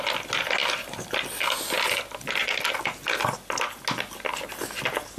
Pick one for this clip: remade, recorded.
recorded